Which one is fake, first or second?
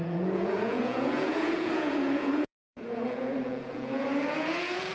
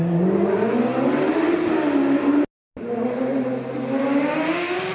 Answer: first